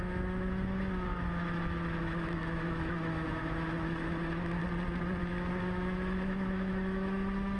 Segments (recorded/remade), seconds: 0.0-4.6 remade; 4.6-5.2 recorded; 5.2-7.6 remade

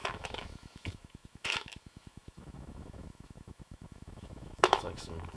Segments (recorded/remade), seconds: 0.0-5.4 remade